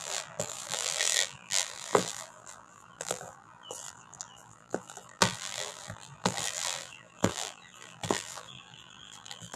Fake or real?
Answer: fake